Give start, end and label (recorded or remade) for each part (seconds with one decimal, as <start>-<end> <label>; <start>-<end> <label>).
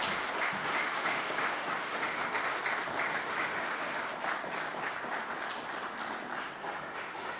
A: 0.0-0.6 recorded; 0.6-2.4 remade; 2.4-3.1 recorded; 3.1-4.0 remade; 4.0-6.6 recorded; 6.6-7.4 remade